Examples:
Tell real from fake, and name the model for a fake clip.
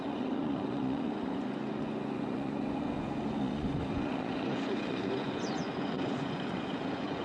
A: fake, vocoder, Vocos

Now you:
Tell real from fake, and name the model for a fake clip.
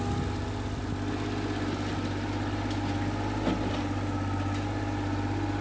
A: real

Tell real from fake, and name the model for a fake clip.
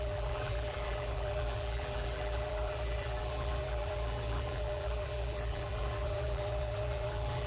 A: fake, vocoder, BigVGAN v2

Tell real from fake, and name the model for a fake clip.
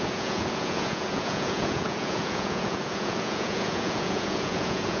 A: fake, vocoder, Vocos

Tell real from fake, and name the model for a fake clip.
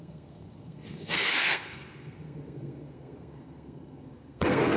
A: fake, codec, SNAC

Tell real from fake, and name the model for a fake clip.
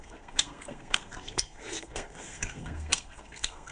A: fake, codec, SNAC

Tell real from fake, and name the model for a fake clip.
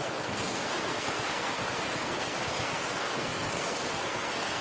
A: fake, codec, SNAC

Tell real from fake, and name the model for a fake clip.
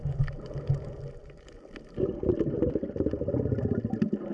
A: real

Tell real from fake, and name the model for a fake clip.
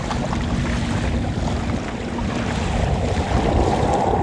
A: real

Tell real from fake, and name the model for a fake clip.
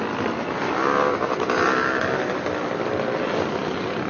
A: real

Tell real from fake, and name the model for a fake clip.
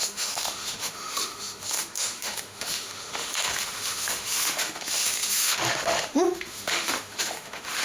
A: fake, autoencoder, DAC-VAE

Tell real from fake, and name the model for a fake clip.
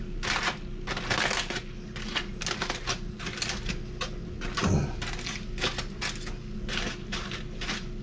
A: real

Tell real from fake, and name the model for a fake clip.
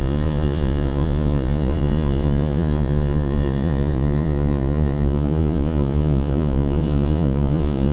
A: fake, vocoder, Vocos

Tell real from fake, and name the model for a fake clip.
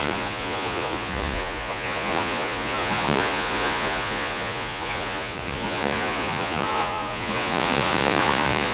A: fake, vocoder, Vocos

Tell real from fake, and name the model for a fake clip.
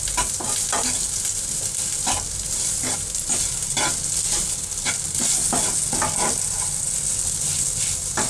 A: real